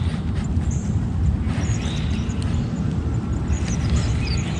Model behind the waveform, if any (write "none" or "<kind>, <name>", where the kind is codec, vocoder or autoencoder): none